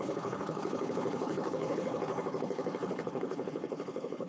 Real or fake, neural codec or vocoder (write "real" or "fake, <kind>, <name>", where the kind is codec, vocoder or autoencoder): fake, codec, HILCodec